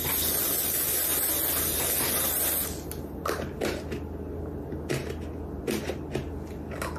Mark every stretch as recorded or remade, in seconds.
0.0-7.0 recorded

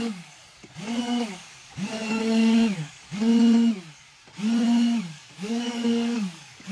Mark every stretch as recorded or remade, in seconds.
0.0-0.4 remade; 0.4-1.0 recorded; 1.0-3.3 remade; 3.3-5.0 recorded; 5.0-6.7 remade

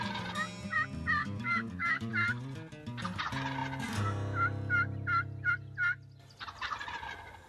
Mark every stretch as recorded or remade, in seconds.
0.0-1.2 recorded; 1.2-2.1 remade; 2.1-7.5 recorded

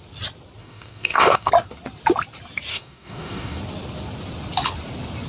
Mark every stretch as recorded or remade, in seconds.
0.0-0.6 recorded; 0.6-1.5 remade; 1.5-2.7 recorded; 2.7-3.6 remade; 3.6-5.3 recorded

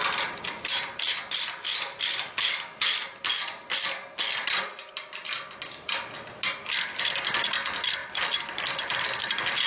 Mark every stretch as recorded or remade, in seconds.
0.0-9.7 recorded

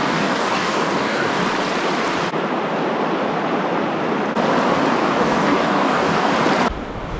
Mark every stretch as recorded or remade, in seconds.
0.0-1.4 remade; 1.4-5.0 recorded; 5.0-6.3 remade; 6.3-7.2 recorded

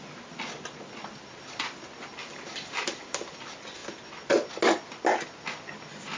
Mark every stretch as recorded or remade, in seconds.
0.0-6.2 recorded

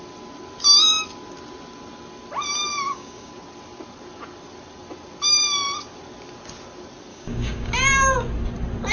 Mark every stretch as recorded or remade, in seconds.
0.0-2.7 recorded; 2.7-3.3 remade; 3.3-7.1 recorded; 7.1-7.7 remade; 7.7-8.9 recorded